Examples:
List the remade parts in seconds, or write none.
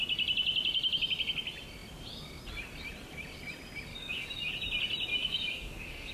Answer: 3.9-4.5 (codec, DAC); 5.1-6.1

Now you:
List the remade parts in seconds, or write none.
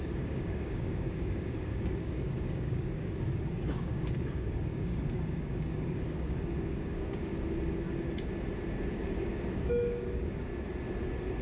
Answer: 0.0-7.3 (codec, DAC); 8.9-10.5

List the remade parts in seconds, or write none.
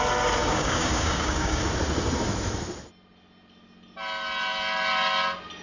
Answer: 0.4-1.6 (codec, DAC)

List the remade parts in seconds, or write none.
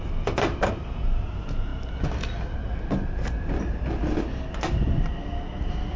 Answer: none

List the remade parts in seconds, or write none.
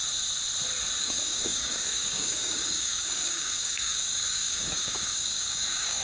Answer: 1.0-6.0 (codec, DAC)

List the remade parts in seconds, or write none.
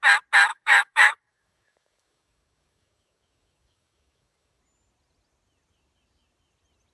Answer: 0.5-4.6 (codec, DAC)